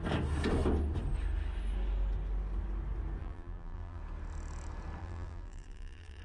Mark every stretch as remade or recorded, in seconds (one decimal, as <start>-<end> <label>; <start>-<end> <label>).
0.0-3.2 recorded; 3.2-4.0 remade; 4.0-5.0 recorded; 5.0-6.2 remade